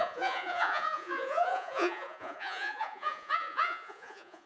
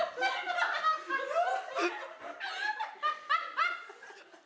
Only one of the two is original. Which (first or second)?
second